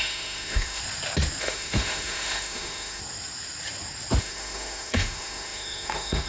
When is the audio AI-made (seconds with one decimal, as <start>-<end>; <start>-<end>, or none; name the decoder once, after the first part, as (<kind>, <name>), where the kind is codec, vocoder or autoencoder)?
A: 0.0-0.8 (autoencoder, DAC-VAE); 1.4-3.0; 4.2-6.3